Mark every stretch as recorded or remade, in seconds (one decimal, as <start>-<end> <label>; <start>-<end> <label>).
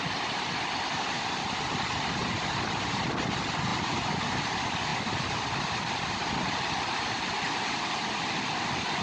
0.0-2.2 recorded; 2.2-3.1 remade; 3.1-3.7 recorded; 3.7-4.4 remade; 4.4-9.0 recorded